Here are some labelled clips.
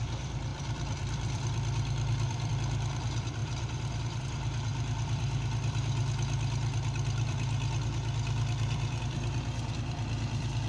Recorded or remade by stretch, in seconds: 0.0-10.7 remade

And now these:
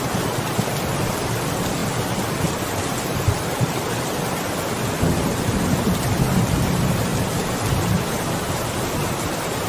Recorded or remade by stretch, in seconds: 0.0-9.7 recorded

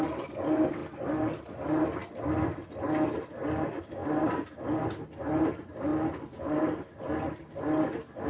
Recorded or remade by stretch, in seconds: 0.0-8.3 recorded

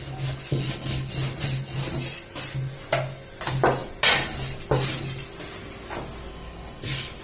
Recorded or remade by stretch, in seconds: 0.0-0.5 recorded; 0.5-1.1 remade; 1.1-6.3 recorded; 6.3-7.2 remade

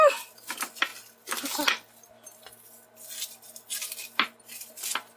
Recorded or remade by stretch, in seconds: 0.0-5.2 recorded